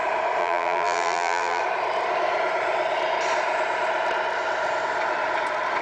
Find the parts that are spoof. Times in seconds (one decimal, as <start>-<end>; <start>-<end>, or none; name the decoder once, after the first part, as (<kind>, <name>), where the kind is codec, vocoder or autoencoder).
0.4-1.6 (vocoder, BigVGAN v2)